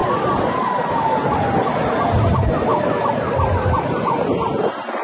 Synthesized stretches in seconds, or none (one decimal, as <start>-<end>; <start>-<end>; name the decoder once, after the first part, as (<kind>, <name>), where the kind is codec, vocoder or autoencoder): 0.0-0.6 (vocoder, BigVGAN v2)